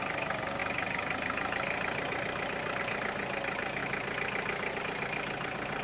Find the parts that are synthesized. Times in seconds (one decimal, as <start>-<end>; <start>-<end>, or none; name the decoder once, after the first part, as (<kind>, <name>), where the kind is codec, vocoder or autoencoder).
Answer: none